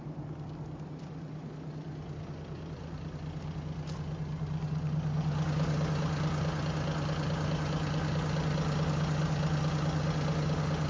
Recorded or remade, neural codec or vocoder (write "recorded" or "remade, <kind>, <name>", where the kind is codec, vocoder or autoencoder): recorded